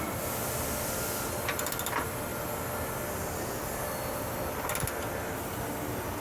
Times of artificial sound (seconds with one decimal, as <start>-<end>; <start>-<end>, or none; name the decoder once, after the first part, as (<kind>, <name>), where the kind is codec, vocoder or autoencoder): none